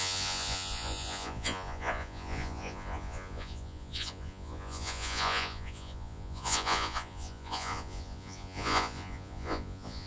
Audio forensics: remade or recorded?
remade